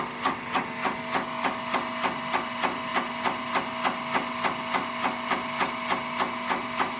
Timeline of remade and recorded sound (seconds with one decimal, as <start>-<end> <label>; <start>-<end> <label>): 0.0-7.0 recorded